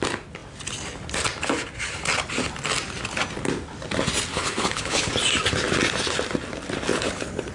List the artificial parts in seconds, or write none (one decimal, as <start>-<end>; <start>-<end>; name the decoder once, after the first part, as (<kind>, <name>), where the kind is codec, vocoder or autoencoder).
4.3-5.1 (codec, HILCodec); 6.9-7.5